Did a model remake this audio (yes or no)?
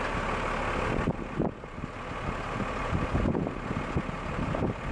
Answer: no